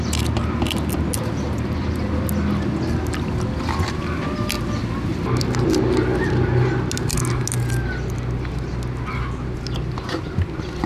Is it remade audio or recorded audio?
recorded